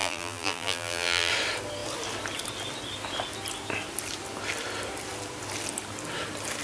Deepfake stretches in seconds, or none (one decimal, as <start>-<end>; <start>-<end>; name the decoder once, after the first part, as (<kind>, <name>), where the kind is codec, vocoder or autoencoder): 0.0-1.3 (vocoder, BigVGAN v2)